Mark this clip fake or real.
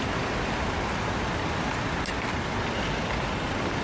real